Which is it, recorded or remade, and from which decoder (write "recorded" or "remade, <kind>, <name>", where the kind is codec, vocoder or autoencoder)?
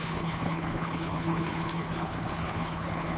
remade, codec, HILCodec